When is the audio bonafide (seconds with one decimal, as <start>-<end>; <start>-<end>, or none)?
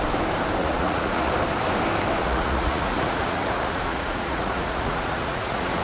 0.0-0.6; 1.3-2.2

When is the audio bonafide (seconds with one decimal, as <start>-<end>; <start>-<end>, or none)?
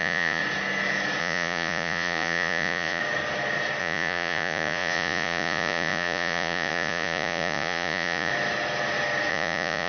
0.4-1.2; 3.0-3.8; 8.3-9.3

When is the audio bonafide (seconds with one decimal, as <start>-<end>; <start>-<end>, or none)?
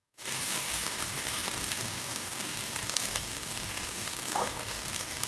none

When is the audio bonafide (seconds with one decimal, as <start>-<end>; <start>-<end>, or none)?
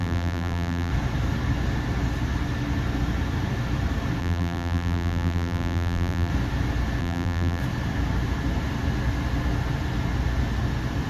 0.9-4.2; 6.3-7.0; 7.6-11.1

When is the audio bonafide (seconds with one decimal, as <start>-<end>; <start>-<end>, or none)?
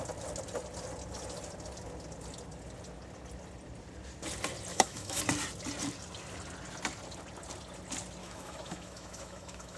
0.0-4.7; 5.2-8.2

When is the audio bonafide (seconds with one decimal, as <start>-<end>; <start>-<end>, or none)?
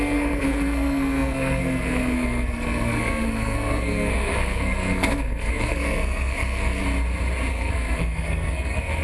6.8-7.5